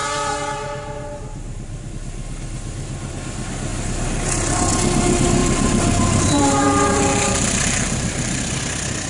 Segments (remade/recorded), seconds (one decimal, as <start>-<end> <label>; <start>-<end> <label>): 0.0-1.9 remade; 1.9-3.7 recorded; 3.7-4.7 remade; 4.7-5.4 recorded; 5.4-8.4 remade; 8.4-9.1 recorded